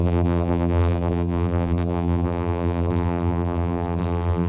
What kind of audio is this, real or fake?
fake